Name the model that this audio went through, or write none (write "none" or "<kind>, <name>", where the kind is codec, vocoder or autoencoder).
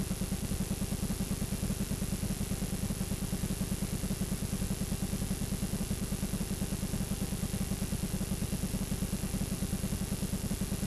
none